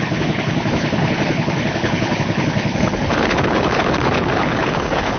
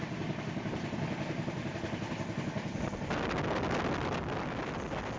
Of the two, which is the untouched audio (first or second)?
second